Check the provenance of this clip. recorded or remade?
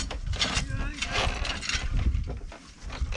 recorded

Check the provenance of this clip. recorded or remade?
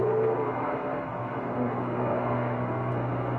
remade